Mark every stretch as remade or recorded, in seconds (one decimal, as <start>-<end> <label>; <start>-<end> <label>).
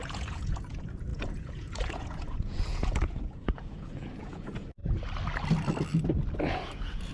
0.0-4.8 remade; 4.8-6.5 recorded; 6.5-7.1 remade